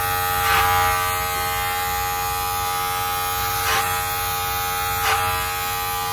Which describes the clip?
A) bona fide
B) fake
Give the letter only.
A